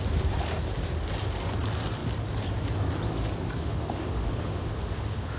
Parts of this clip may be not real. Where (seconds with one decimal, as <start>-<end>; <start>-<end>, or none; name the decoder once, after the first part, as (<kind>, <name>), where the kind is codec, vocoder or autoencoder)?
3.6-5.4 (autoencoder, DAC-VAE)